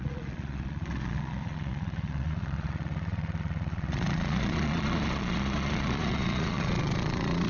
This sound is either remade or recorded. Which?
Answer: remade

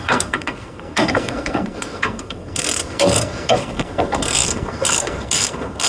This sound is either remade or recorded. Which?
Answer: remade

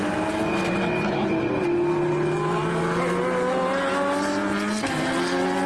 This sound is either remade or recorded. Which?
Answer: recorded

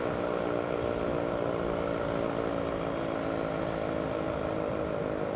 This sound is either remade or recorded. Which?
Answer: recorded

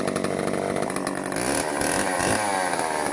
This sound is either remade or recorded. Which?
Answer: recorded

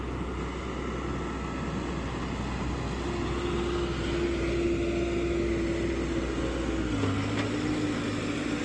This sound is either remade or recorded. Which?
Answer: recorded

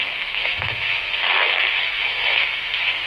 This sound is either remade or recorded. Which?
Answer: remade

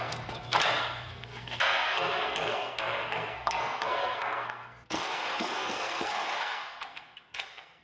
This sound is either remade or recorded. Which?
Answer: remade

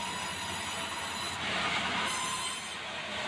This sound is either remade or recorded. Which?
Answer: recorded